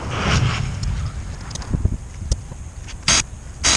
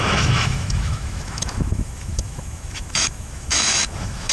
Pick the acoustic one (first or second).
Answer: first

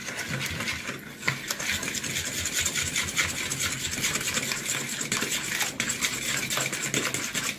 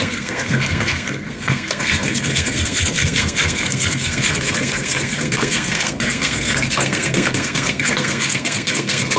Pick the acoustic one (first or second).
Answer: first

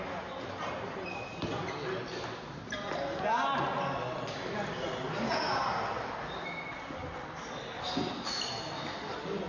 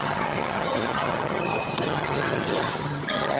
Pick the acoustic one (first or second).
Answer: first